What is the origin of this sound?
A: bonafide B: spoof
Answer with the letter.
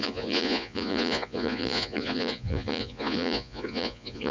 B